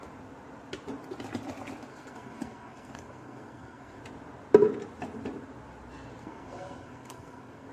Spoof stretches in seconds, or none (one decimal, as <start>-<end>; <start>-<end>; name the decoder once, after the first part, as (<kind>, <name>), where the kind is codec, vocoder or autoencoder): 1.9-4.0 (codec, SNAC); 6.2-7.7